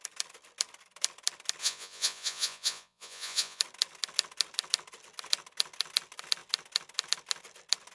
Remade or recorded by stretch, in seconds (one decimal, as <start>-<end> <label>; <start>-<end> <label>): 0.0-1.6 recorded; 1.6-3.6 remade; 3.6-7.9 recorded